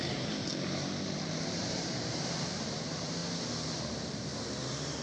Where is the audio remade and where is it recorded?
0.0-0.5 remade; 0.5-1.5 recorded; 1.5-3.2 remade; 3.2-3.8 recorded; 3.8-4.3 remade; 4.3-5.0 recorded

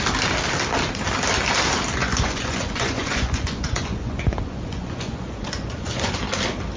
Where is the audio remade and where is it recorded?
0.0-2.0 recorded; 2.0-6.1 remade; 6.1-6.8 recorded

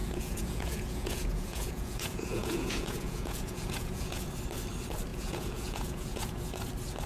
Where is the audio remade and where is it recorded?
0.0-4.3 remade; 4.3-5.1 recorded; 5.1-6.4 remade; 6.4-7.1 recorded

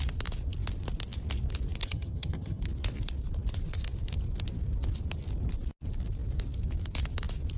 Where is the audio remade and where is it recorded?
0.0-1.8 recorded; 1.8-2.6 remade; 2.6-7.6 recorded